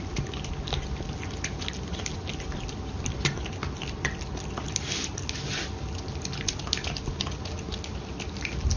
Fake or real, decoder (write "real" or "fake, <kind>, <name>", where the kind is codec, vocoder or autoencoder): real